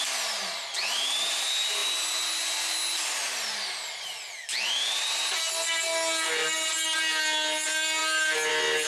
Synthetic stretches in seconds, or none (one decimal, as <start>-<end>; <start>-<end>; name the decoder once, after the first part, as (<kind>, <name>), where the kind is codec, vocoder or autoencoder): none